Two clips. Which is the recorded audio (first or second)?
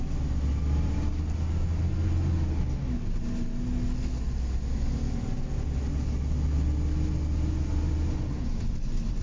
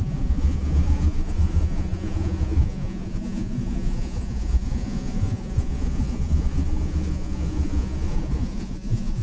first